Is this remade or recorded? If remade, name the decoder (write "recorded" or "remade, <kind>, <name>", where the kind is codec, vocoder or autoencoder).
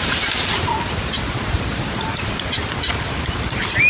recorded